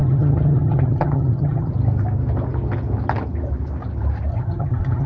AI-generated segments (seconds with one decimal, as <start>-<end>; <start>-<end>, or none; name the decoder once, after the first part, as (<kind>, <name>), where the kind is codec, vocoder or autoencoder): 0.0-1.7 (vocoder, HiFi-GAN); 4.3-5.1